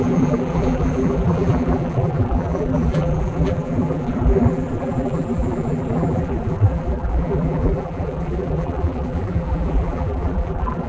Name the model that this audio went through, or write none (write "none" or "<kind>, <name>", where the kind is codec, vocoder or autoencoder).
vocoder, BigVGAN v2